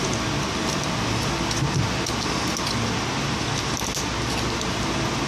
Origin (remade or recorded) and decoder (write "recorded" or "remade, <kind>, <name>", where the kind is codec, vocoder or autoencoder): recorded